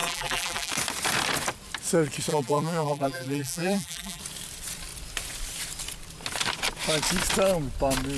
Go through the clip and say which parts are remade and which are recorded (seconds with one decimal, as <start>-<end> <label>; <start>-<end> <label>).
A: 0.0-0.7 remade; 0.7-2.3 recorded; 2.3-4.2 remade; 4.2-8.2 recorded